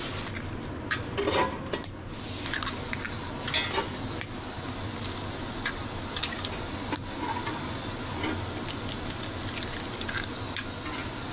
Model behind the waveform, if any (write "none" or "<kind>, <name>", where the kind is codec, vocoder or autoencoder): none